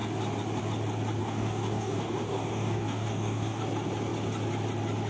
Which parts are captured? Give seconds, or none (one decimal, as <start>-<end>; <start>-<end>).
0.0-1.2; 3.6-5.1

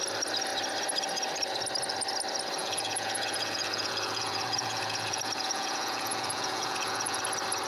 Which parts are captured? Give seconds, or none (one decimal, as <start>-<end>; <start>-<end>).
0.0-2.6; 7.2-7.7

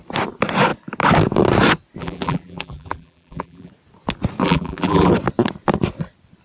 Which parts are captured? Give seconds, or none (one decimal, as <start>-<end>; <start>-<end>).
0.0-2.0; 3.7-4.4; 5.1-6.4

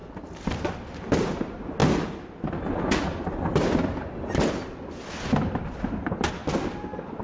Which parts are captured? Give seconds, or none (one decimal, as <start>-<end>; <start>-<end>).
0.0-7.2

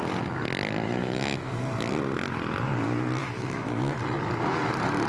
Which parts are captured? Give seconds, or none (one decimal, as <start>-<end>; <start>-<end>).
0.0-1.0; 1.6-3.2; 4.0-5.1

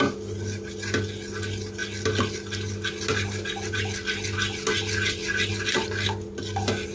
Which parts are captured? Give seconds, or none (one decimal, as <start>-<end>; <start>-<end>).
0.0-6.9

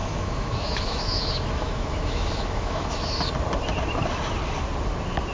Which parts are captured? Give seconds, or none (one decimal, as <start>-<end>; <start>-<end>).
3.2-5.3

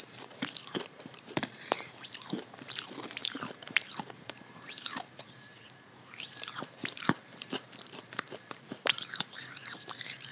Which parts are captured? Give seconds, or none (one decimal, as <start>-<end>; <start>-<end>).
none